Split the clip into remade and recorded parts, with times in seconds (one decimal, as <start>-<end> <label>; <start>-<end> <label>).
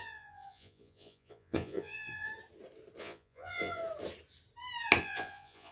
0.0-2.3 remade; 2.3-3.0 recorded; 3.0-3.8 remade; 3.8-5.0 recorded; 5.0-5.7 remade